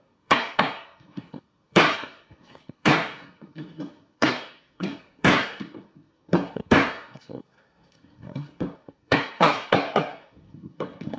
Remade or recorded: remade